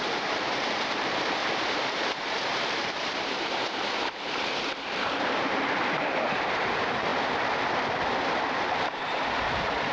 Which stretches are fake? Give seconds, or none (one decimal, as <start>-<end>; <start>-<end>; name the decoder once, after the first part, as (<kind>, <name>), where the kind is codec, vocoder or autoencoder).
0.0-7.1 (vocoder, BigVGAN v2); 8.6-9.9